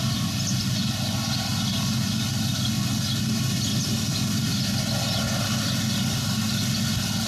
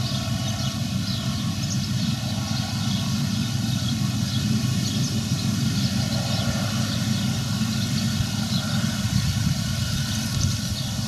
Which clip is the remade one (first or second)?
second